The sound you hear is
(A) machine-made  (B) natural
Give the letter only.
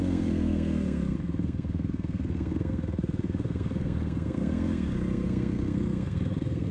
A